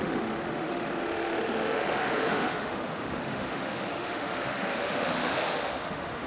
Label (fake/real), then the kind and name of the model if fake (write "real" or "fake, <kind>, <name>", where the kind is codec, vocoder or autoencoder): fake, autoencoder, DAC-VAE